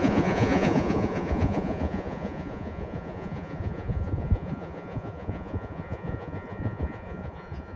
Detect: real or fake fake